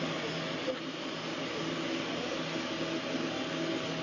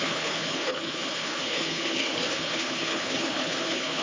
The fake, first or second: second